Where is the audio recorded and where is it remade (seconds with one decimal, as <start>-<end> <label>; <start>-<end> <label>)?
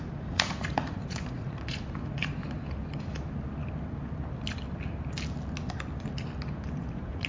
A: 0.0-2.4 remade; 2.4-6.8 recorded; 6.8-7.3 remade